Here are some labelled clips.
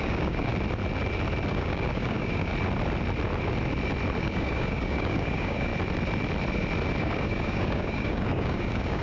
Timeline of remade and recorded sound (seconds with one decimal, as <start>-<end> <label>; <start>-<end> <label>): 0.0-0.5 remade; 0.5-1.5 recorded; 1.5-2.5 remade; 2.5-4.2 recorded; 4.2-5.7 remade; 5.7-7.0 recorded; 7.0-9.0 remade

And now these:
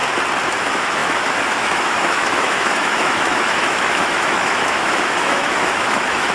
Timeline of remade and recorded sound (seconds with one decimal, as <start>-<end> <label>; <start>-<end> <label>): 0.0-0.6 recorded; 0.6-6.3 remade

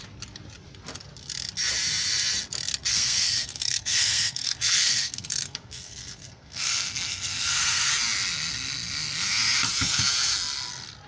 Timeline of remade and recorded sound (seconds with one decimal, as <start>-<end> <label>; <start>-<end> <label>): 0.0-2.9 recorded; 2.9-7.9 remade; 7.9-11.1 recorded

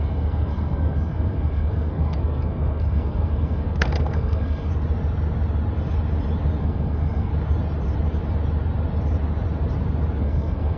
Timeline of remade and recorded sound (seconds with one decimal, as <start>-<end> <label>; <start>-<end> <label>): 0.0-4.7 remade; 4.7-6.6 recorded; 6.6-7.3 remade; 7.3-10.2 recorded; 10.2-10.8 remade